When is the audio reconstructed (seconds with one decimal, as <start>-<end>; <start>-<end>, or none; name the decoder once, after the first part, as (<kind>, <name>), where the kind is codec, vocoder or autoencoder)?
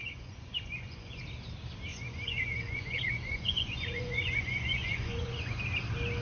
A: 0.0-1.2 (vocoder, Vocos); 1.9-5.6